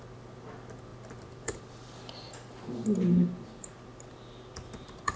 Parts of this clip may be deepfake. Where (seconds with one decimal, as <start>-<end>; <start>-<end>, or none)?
none